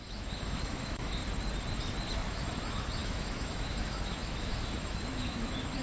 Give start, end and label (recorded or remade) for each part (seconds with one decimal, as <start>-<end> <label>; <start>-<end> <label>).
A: 0.0-1.2 remade; 1.2-2.1 recorded; 2.1-5.8 remade